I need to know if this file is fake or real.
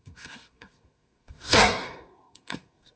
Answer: fake